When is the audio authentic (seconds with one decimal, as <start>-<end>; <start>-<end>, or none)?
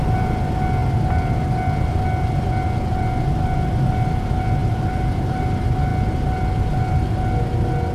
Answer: 0.0-4.6; 5.4-7.9